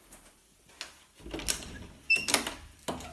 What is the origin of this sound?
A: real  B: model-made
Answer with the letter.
A